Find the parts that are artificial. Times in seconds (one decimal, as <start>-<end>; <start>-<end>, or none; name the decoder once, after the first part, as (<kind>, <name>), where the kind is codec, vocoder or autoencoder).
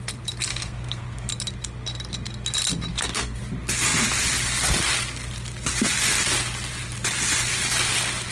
0.5-1.3 (codec, SNAC); 2.9-3.4